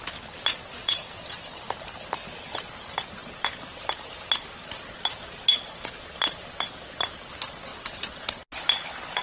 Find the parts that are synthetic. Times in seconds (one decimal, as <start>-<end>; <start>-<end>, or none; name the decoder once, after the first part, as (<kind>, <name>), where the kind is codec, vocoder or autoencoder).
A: 0.8-1.7 (vocoder, BigVGAN v2); 7.7-8.4